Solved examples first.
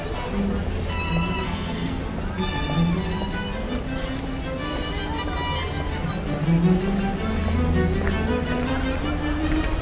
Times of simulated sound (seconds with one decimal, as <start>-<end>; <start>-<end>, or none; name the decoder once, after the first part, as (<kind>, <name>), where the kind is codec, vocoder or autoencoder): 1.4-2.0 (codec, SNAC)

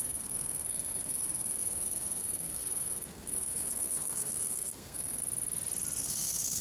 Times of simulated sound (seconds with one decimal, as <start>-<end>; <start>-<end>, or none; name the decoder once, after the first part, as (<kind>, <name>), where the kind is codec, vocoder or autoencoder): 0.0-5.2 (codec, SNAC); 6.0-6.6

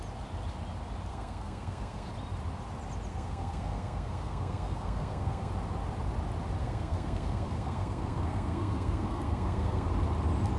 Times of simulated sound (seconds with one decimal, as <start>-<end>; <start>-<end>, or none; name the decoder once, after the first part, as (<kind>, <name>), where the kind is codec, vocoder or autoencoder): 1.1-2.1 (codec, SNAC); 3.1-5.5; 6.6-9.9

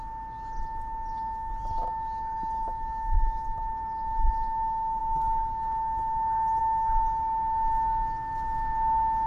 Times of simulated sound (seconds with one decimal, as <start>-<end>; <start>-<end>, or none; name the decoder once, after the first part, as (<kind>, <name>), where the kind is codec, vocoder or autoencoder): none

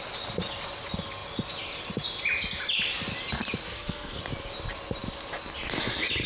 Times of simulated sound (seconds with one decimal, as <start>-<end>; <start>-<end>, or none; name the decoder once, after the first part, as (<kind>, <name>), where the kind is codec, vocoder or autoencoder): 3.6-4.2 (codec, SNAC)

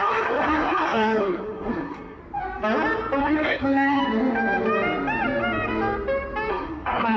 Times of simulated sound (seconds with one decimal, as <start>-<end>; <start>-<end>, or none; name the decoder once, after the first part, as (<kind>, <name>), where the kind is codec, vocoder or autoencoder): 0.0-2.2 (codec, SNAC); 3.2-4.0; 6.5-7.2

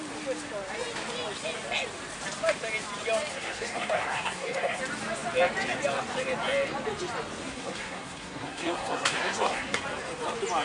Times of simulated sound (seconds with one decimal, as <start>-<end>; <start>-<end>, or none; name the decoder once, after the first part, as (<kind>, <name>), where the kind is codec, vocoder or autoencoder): 3.3-4.8 (codec, SNAC); 7.4-9.8